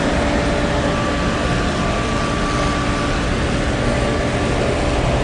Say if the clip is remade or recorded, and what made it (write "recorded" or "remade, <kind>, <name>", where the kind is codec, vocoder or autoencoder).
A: recorded